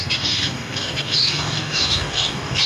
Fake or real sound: fake